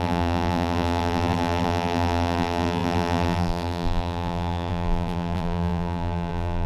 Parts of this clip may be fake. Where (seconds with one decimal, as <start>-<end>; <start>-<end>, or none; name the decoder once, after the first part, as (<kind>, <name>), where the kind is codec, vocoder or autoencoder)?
0.0-6.7 (vocoder, BigVGAN v2)